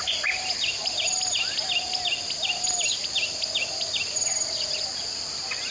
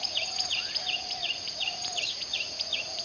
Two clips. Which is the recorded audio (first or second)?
first